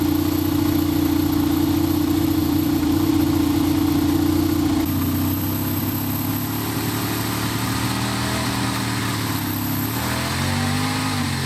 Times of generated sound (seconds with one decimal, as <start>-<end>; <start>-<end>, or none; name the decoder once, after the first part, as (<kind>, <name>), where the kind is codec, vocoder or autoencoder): 2.4-3.1 (vocoder, BigVGAN v2)